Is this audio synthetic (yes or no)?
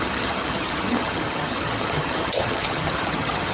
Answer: yes